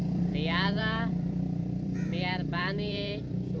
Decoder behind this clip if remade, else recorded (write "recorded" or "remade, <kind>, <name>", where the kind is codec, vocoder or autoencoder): remade, vocoder, BigVGAN v2